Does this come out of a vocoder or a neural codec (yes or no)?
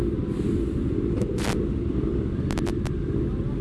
no